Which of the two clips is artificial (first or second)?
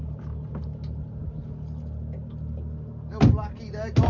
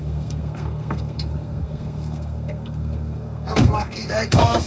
second